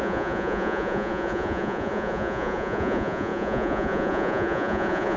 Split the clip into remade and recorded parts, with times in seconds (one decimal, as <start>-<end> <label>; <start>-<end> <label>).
0.0-5.2 remade